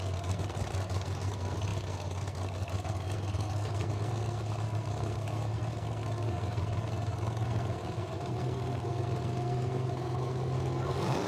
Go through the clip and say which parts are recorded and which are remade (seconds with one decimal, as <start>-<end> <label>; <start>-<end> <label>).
0.0-11.3 remade